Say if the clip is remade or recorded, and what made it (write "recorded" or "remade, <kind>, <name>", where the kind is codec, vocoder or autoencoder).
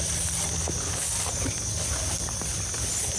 recorded